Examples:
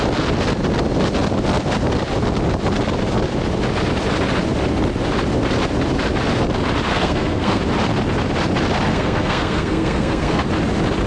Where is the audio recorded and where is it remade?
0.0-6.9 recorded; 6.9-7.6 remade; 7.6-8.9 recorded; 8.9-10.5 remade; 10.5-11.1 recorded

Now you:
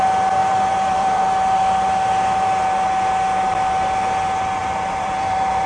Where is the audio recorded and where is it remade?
0.0-0.4 recorded; 0.4-1.2 remade; 1.2-4.6 recorded; 4.6-5.7 remade

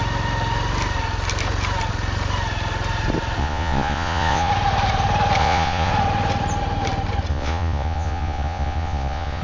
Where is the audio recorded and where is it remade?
0.0-3.4 recorded; 3.4-4.5 remade; 4.5-5.4 recorded; 5.4-5.9 remade; 5.9-7.3 recorded; 7.3-9.4 remade

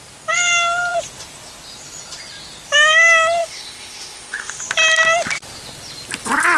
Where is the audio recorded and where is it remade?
0.0-3.4 recorded; 3.4-4.6 remade; 4.6-6.6 recorded

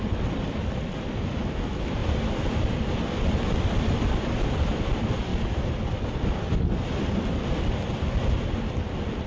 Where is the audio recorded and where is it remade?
0.0-9.3 recorded

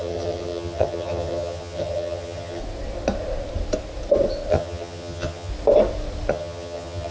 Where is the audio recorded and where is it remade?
0.0-2.6 remade; 2.6-4.5 recorded; 4.5-5.5 remade; 5.5-6.3 recorded; 6.3-7.1 remade

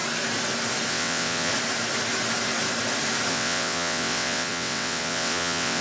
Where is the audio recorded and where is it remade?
0.0-0.9 recorded; 0.9-1.5 remade; 1.5-3.3 recorded; 3.3-5.8 remade